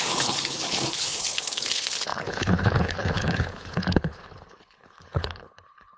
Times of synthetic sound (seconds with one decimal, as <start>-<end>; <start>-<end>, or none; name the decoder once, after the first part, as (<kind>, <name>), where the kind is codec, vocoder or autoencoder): 0.0-6.0 (codec, HILCodec)